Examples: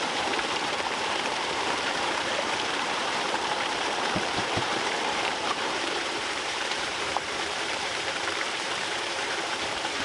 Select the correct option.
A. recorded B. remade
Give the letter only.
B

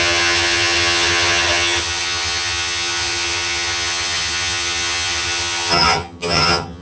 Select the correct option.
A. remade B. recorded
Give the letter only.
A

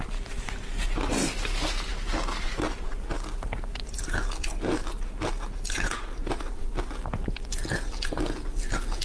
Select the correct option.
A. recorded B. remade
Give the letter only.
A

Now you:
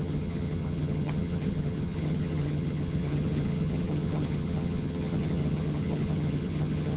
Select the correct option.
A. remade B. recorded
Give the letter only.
A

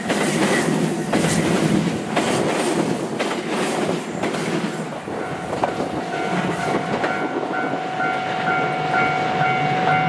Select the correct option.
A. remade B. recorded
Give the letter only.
B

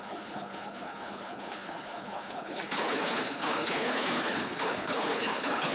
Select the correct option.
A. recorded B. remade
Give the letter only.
B